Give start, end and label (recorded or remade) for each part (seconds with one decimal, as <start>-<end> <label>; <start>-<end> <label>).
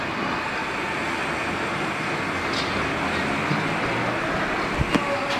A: 0.0-5.4 recorded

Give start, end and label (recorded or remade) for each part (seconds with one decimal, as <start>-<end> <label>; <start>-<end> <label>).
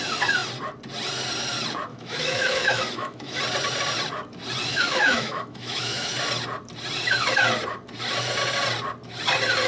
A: 0.0-1.9 recorded; 1.9-3.4 remade; 3.4-4.7 recorded; 4.7-6.1 remade; 6.1-9.7 recorded